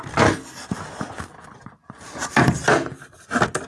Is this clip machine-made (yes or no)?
no